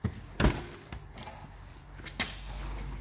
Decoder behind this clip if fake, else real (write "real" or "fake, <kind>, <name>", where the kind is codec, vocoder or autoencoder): real